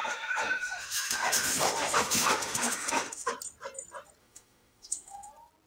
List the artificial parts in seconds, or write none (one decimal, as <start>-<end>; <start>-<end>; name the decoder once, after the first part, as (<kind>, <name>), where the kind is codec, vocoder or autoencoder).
0.0-3.3 (autoencoder, DAC-VAE); 4.2-5.3